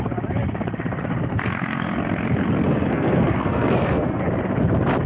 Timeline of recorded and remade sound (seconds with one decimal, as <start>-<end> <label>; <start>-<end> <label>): 0.0-1.3 recorded; 1.3-1.9 remade; 1.9-2.6 recorded; 2.6-4.2 remade; 4.2-5.1 recorded